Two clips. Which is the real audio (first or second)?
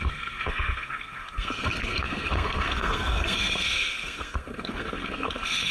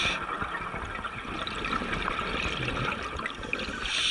second